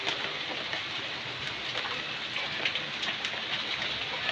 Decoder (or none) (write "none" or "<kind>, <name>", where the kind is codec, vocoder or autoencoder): none